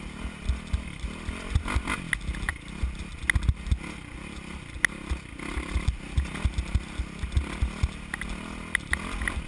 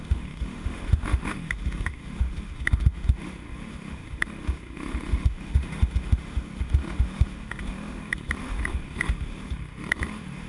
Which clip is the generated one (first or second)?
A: second